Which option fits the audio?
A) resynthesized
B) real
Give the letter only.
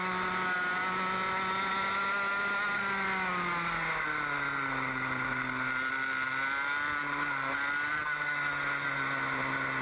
B